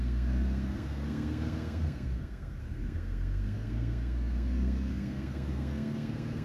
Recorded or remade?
remade